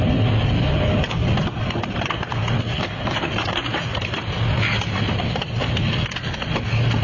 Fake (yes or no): no